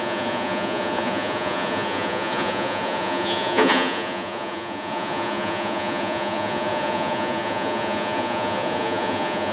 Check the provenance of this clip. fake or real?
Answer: fake